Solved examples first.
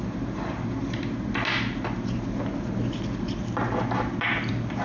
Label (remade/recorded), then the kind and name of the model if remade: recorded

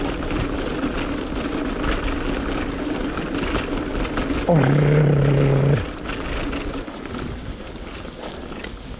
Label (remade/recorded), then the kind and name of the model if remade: recorded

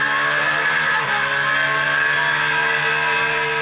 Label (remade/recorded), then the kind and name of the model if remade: recorded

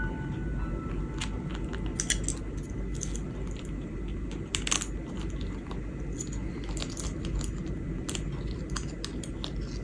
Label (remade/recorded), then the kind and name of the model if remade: recorded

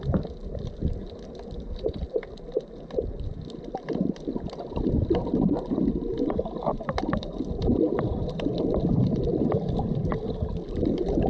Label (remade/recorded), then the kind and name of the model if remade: recorded